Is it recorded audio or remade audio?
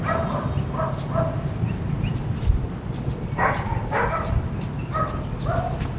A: recorded